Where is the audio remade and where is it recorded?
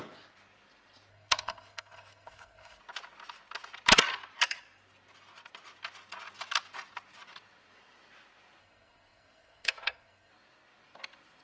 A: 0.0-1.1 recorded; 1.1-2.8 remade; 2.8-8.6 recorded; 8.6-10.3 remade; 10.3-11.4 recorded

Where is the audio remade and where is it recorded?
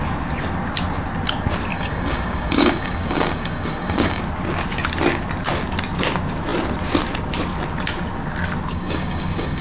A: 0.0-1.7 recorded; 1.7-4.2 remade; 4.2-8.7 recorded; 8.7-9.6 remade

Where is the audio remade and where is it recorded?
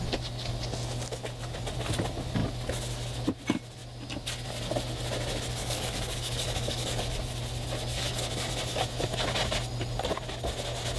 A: 0.0-5.6 recorded; 5.6-7.0 remade; 7.0-11.0 recorded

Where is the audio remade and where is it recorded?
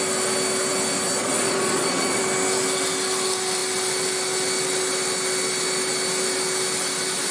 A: 0.0-1.2 recorded; 1.2-2.2 remade; 2.2-7.3 recorded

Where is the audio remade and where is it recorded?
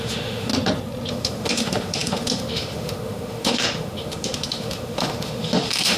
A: 0.0-0.5 remade; 0.5-1.1 recorded; 1.1-6.0 remade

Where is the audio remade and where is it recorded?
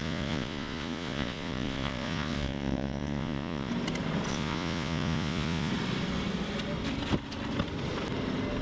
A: 0.0-3.7 remade; 3.7-4.3 recorded; 4.3-5.7 remade; 5.7-8.6 recorded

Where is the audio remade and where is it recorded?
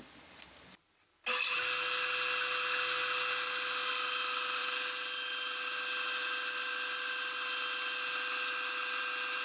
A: 0.0-9.4 recorded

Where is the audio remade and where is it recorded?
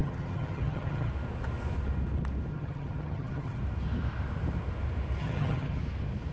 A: 0.0-1.1 remade; 1.1-2.5 recorded; 2.5-3.6 remade; 3.6-5.2 recorded; 5.2-5.8 remade; 5.8-6.3 recorded